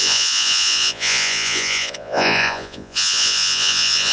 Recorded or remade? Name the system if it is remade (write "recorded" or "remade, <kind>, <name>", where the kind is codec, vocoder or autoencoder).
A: remade, vocoder, Vocos